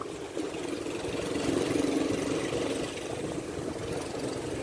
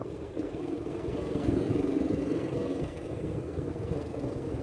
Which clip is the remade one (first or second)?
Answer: second